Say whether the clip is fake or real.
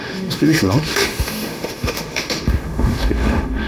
fake